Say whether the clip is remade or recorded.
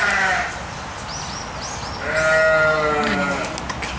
recorded